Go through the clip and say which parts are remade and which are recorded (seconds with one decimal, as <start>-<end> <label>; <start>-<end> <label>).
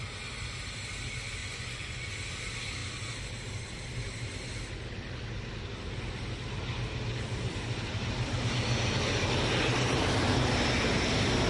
0.0-1.4 recorded; 1.4-2.1 remade; 2.1-11.5 recorded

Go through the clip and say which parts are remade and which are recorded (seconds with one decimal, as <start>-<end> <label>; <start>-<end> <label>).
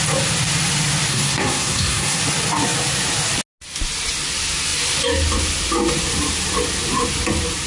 0.0-1.1 recorded; 1.1-2.2 remade; 2.2-7.7 recorded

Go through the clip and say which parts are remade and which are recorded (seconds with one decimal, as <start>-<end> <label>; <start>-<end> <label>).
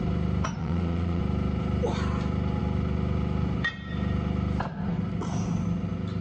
0.0-0.6 recorded; 0.6-1.2 remade; 1.2-6.2 recorded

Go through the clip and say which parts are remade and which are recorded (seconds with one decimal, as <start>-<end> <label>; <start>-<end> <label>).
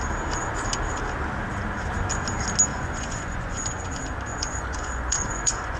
0.0-2.7 recorded; 2.7-3.9 remade; 3.9-4.3 recorded; 4.3-5.8 remade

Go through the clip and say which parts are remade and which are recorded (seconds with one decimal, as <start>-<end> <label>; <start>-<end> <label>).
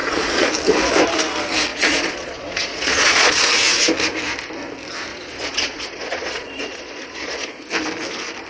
0.0-0.5 remade; 0.5-1.7 recorded; 1.7-3.3 remade; 3.3-5.1 recorded; 5.1-7.6 remade; 7.6-8.5 recorded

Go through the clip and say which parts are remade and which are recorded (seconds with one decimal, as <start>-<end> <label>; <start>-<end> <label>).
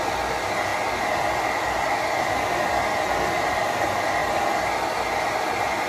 0.0-5.9 recorded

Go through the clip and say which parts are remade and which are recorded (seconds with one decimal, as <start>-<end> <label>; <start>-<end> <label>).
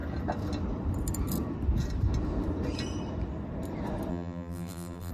0.0-4.1 recorded; 4.1-5.1 remade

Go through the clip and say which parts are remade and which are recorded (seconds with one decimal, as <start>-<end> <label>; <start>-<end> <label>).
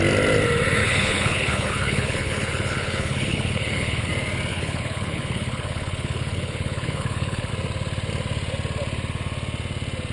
0.0-0.8 recorded; 0.8-4.1 remade; 4.1-4.5 recorded; 4.5-7.5 remade; 7.5-10.1 recorded